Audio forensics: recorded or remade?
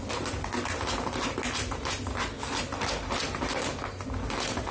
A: recorded